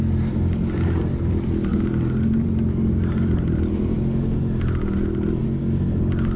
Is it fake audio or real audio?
real